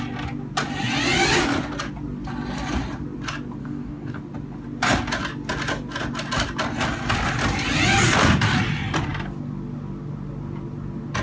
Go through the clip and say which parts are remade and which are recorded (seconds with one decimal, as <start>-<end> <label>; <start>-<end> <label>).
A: 0.0-3.6 recorded; 3.6-4.2 remade; 4.2-11.2 recorded